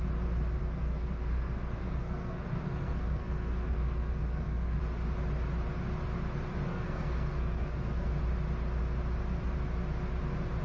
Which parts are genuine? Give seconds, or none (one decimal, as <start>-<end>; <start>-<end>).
0.0-0.6; 4.8-6.7; 8.2-10.6